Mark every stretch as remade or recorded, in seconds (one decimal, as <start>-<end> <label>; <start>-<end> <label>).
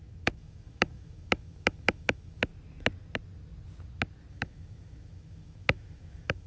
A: 0.0-2.5 remade; 2.5-4.3 recorded; 4.3-6.5 remade